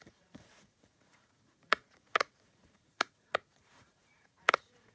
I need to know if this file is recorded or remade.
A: remade